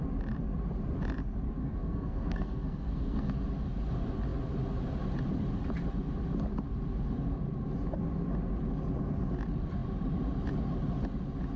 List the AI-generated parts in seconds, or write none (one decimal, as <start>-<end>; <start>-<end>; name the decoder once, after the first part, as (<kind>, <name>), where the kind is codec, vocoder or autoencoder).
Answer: 1.6-3.3 (codec, SNAC)